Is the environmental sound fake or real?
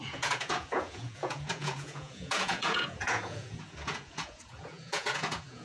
fake